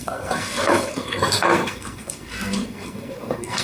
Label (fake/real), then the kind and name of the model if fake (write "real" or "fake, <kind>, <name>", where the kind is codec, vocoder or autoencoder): fake, codec, SNAC